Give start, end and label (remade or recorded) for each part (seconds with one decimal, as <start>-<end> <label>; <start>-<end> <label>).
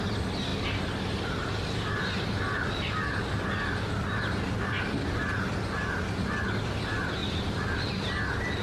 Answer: 0.0-0.5 recorded; 0.5-1.6 remade; 1.6-7.2 recorded; 7.2-8.0 remade; 8.0-8.6 recorded